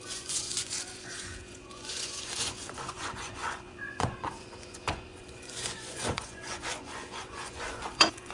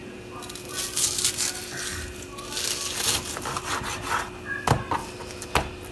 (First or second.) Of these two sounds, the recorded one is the second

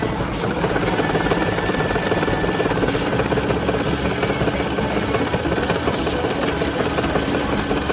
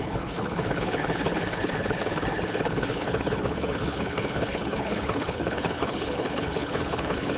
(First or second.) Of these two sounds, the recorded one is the first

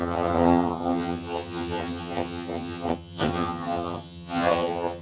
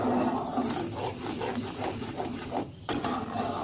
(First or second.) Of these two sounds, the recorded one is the second